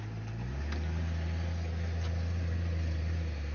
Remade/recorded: recorded